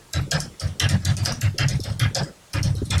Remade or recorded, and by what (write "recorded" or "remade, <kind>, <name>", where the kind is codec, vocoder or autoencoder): recorded